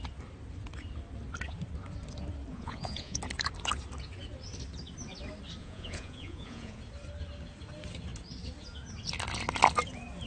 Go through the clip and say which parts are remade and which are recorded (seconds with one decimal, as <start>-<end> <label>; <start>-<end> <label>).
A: 0.0-2.5 recorded; 2.5-3.2 remade; 3.2-5.6 recorded; 5.6-6.8 remade; 6.8-10.3 recorded